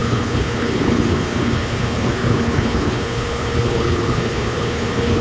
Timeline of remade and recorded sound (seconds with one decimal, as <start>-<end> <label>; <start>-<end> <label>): 0.0-5.2 remade